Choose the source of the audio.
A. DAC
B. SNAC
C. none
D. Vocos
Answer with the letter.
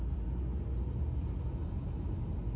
C